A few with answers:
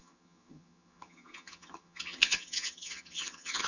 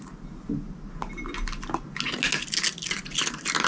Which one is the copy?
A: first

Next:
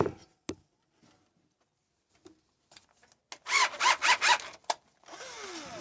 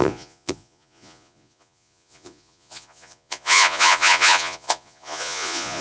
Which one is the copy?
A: second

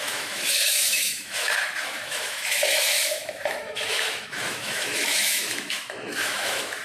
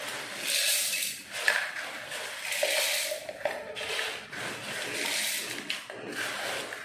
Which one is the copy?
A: first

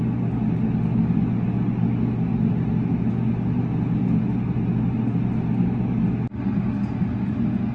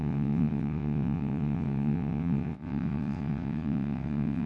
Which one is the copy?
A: second